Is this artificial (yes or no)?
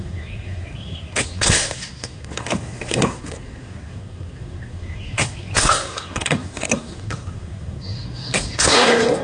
yes